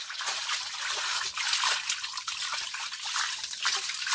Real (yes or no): yes